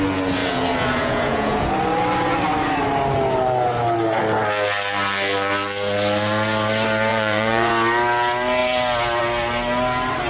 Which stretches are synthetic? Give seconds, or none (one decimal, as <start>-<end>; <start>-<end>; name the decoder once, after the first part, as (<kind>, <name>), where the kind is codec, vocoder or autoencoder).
0.4-1.7 (vocoder, Vocos); 7.1-7.7